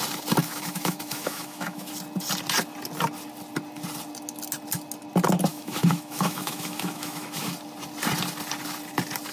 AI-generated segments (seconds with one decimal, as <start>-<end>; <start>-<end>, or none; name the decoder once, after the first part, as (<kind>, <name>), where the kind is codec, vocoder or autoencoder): 0.4-1.9 (autoencoder, DAC-VAE); 5.5-7.5